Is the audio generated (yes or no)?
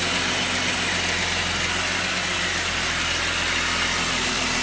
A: no